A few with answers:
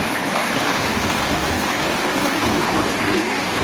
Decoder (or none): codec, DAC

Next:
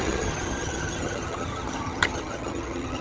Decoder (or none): vocoder, HiFi-GAN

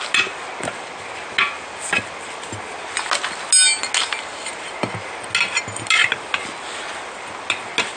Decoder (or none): none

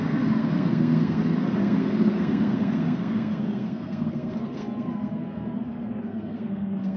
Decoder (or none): codec, SNAC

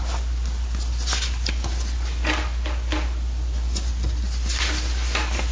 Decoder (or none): none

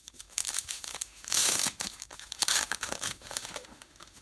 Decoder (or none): autoencoder, DAC-VAE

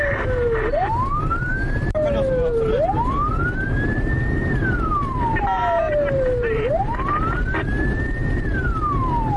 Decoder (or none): vocoder, BigVGAN v2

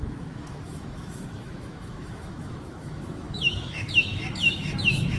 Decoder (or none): autoencoder, DAC-VAE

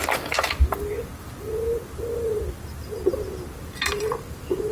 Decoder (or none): none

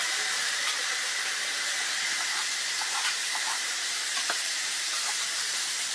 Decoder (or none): vocoder, BigVGAN v2